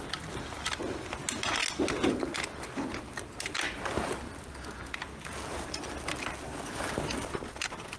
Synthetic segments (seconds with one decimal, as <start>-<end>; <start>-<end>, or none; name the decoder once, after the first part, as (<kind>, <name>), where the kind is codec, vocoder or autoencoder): none